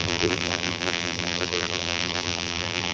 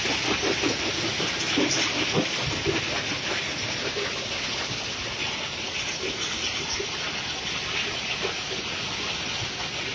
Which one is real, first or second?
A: second